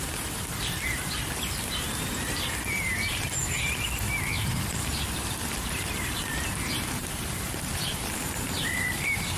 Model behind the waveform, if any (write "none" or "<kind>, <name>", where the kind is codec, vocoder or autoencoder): vocoder, BigVGAN v2